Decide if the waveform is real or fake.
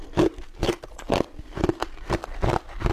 real